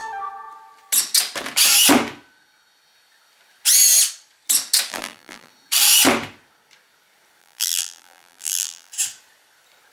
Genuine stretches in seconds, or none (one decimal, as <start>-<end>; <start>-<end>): 0.0-4.9; 5.5-7.4; 8.9-9.9